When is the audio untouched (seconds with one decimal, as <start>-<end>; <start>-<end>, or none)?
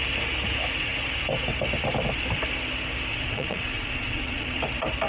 0.0-3.1; 4.6-5.1